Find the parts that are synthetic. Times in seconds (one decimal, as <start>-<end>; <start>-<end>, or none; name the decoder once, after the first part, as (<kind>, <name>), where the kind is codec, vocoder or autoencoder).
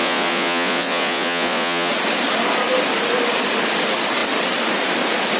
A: 0.0-1.9 (vocoder, Vocos)